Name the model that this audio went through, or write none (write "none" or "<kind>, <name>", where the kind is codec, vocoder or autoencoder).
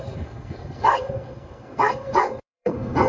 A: codec, SNAC